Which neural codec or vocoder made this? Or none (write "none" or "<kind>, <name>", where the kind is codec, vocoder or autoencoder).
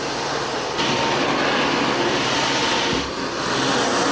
none